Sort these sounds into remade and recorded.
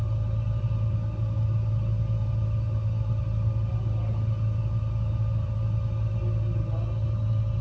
recorded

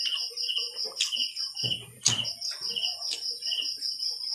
recorded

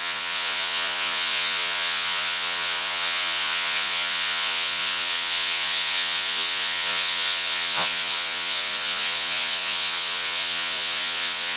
remade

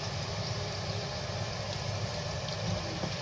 recorded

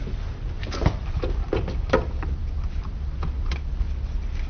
recorded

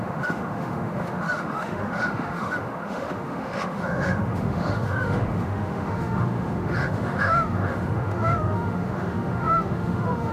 remade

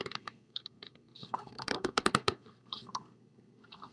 remade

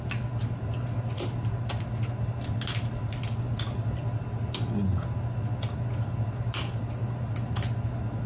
recorded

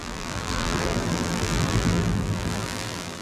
remade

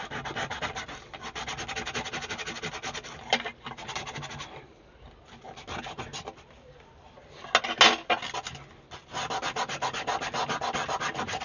recorded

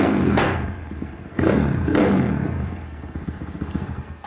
remade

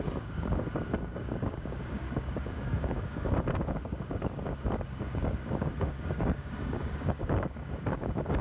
remade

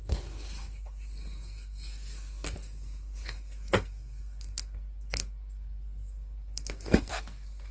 remade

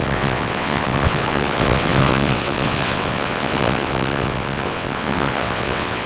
remade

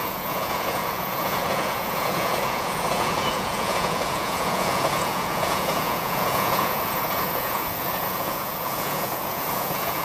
remade